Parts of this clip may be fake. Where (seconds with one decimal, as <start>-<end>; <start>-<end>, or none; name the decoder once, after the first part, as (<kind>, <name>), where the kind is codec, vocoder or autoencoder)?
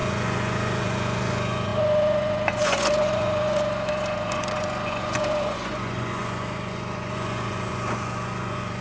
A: 0.0-8.8 (vocoder, Vocos)